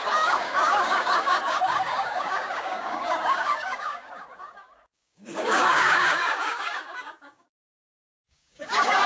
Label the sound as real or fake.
fake